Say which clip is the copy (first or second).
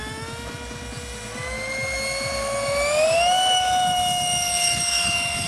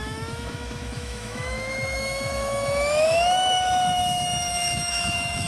second